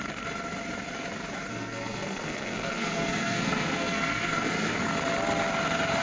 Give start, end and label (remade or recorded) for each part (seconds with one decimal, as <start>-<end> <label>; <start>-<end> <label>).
0.0-1.5 recorded; 1.5-4.8 remade; 4.8-6.0 recorded